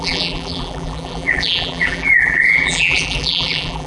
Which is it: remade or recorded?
remade